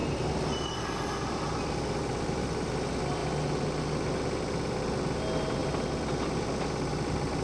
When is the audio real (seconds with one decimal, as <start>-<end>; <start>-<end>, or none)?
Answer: 0.0-7.4